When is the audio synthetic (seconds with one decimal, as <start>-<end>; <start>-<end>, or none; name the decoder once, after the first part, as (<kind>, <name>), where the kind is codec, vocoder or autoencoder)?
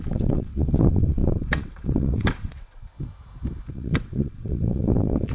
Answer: 0.0-2.9 (vocoder, WaveNeXt); 3.7-5.3